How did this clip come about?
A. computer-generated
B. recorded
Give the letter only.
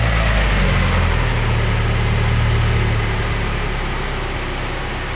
B